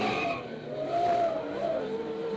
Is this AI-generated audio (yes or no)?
no